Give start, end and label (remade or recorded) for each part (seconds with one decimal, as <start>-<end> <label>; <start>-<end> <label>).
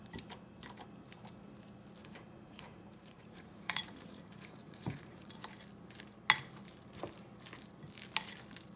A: 0.0-2.0 recorded; 2.0-5.4 remade; 5.4-8.8 recorded